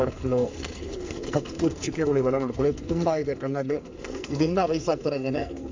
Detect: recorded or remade remade